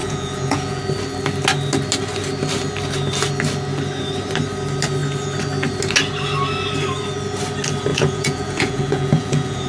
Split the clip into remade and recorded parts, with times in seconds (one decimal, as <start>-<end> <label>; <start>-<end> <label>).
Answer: 0.0-0.8 remade; 0.8-7.9 recorded; 7.9-9.7 remade